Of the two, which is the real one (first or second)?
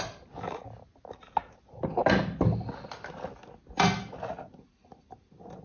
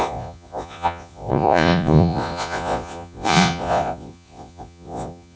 first